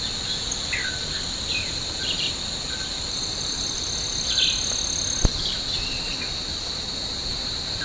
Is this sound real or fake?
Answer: real